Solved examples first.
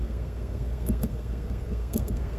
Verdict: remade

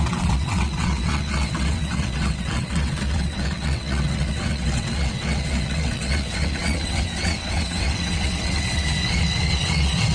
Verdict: remade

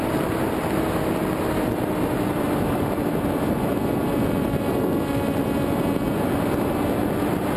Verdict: recorded